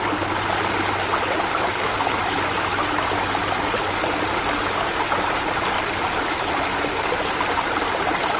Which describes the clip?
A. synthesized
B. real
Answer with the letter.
B